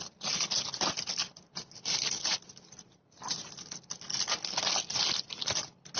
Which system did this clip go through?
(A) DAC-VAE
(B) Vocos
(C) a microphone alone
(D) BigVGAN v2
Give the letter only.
C